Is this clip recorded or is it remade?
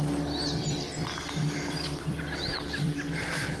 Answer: remade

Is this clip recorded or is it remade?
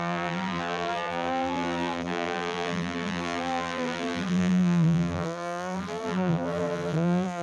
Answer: remade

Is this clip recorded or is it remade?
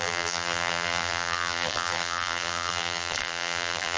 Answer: remade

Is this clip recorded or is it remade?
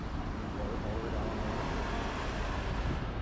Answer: remade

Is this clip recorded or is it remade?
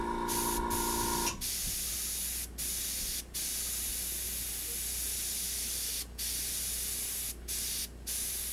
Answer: recorded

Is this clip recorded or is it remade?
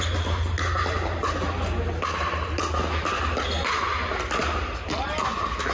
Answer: recorded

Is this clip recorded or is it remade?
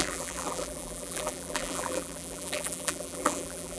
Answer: remade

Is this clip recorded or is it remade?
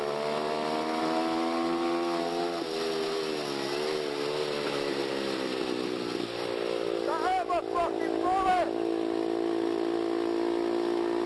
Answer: recorded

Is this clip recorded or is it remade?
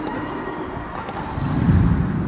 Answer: recorded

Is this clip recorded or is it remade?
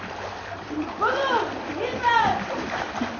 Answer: remade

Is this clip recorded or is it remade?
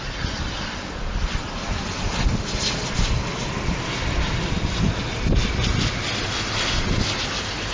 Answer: recorded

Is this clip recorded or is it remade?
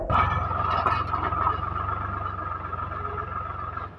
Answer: recorded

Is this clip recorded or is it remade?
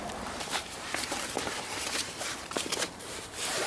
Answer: remade